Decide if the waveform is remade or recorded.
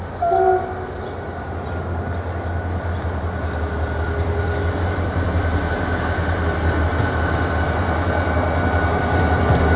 recorded